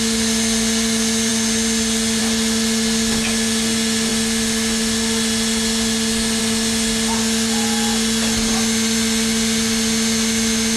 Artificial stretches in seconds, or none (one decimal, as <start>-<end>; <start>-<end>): none